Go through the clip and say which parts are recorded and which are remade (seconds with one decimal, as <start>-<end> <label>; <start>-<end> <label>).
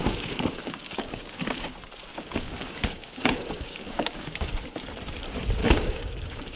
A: 0.0-1.7 remade; 1.7-2.1 recorded; 2.1-4.5 remade; 4.5-5.6 recorded; 5.6-6.6 remade